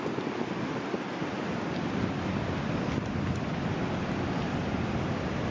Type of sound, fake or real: real